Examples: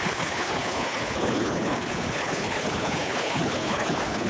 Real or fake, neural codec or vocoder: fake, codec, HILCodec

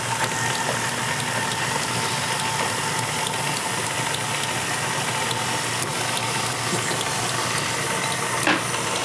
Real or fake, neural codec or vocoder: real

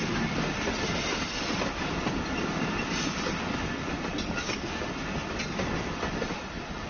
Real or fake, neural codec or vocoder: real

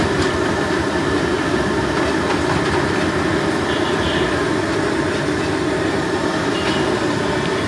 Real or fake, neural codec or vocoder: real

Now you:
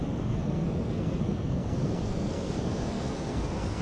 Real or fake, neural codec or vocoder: fake, codec, SNAC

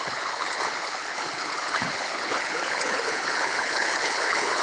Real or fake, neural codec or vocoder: fake, codec, HILCodec